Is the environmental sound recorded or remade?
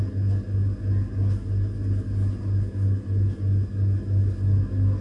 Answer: recorded